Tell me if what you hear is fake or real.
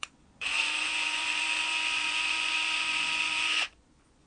fake